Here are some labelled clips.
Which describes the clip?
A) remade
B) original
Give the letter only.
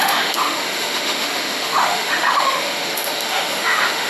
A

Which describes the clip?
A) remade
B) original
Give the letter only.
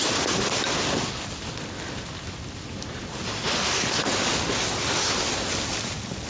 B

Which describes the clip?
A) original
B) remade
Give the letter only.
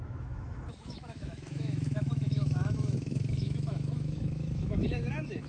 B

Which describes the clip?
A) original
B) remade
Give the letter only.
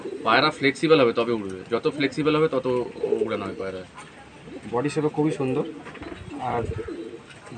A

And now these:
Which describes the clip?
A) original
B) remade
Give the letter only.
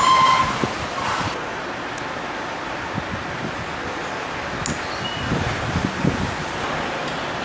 A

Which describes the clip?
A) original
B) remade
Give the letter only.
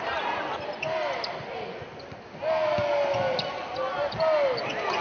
A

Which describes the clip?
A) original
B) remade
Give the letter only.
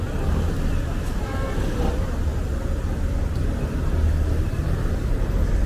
A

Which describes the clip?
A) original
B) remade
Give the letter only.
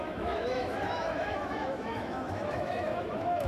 B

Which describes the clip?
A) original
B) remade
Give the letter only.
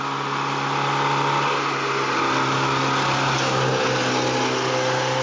A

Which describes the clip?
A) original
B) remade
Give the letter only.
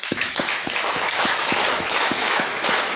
B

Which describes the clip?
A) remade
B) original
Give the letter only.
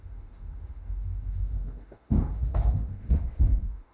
A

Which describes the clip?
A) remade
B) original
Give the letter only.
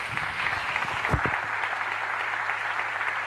B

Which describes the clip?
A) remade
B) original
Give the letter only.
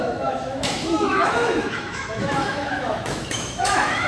A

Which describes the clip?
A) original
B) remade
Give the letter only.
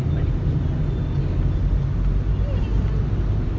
A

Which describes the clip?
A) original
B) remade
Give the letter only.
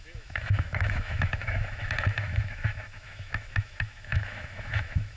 B